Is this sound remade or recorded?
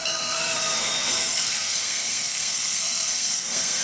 remade